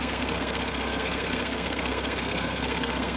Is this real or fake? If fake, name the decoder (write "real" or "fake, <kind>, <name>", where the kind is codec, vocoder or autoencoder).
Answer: fake, codec, SNAC